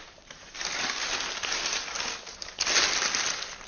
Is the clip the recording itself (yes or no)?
yes